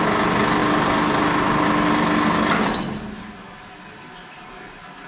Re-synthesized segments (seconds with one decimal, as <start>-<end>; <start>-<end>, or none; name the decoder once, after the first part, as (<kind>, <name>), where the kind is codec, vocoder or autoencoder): none

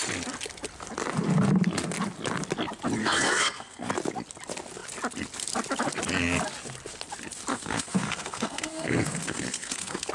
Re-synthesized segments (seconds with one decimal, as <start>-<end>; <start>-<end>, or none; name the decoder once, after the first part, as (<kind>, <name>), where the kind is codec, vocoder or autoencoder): 3.0-3.9 (codec, SNAC); 7.5-10.1

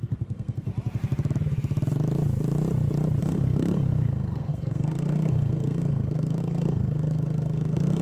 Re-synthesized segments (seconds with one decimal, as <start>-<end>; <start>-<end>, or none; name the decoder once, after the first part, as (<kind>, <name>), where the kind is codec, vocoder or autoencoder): 0.0-0.7 (codec, SNAC); 3.2-8.0

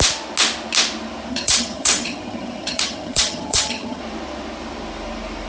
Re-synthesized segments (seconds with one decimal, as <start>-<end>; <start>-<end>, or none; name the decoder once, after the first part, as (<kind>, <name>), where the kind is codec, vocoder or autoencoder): 1.3-4.0 (vocoder, HiFi-GAN)